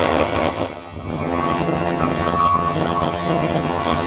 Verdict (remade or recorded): remade